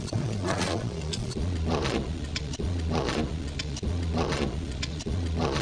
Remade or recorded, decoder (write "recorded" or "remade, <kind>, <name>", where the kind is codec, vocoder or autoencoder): remade, vocoder, Vocos